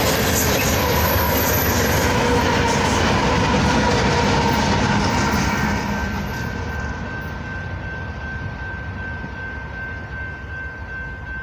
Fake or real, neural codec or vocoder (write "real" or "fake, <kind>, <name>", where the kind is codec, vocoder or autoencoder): real